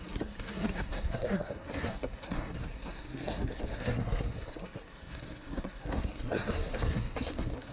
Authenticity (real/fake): fake